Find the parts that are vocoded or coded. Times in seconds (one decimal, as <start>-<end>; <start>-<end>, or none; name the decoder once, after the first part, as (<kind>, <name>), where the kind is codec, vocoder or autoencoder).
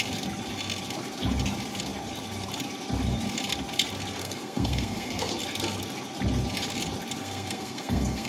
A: 4.2-5.3 (codec, SNAC); 7.2-8.3